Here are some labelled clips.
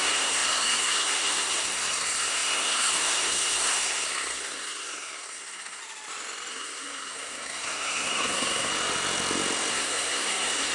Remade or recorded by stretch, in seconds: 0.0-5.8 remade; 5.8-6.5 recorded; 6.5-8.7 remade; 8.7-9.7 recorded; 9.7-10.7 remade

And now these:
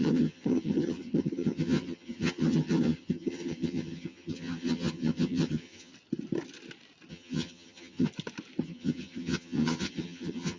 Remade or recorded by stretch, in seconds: 0.0-5.9 remade; 5.9-7.1 recorded; 7.1-8.1 remade; 8.1-8.6 recorded; 8.6-10.6 remade